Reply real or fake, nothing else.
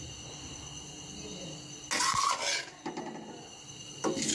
real